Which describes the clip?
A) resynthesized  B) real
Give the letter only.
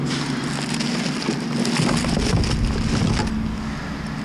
B